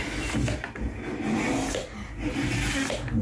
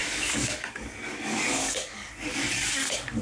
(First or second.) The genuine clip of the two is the first